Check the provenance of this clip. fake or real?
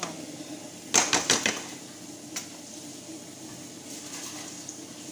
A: real